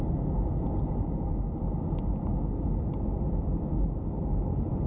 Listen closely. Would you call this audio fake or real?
real